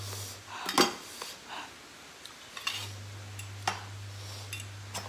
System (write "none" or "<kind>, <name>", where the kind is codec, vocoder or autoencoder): none